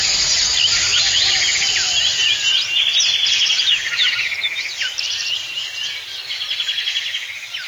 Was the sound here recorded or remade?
recorded